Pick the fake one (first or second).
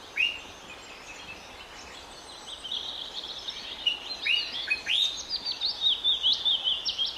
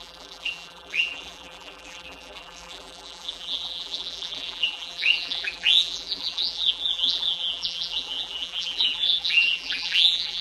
second